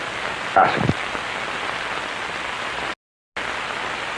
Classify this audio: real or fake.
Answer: real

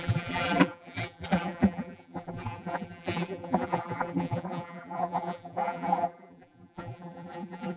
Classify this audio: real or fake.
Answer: fake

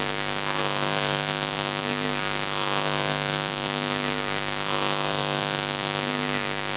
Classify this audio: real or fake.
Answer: fake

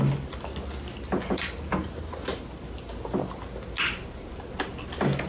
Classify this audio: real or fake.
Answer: real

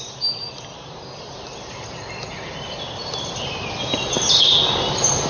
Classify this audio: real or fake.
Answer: real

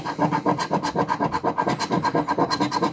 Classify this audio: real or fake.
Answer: real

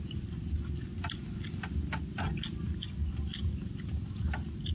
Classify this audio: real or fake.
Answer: real